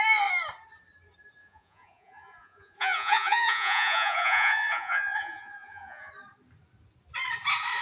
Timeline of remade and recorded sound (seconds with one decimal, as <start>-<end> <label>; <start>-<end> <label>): 0.0-1.4 recorded; 1.4-6.1 remade; 6.1-7.8 recorded